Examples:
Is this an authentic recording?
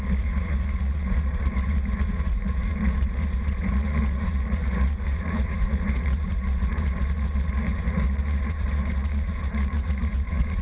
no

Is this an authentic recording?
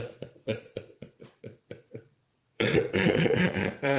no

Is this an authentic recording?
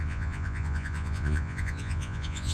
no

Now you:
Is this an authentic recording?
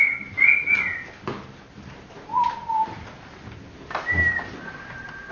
yes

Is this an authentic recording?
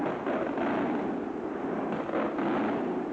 yes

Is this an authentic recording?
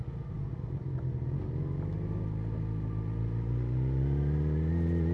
yes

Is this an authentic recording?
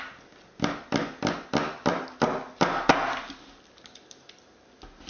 yes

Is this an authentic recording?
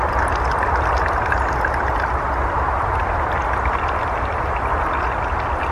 yes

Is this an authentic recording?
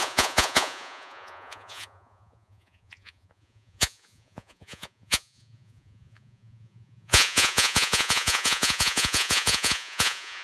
no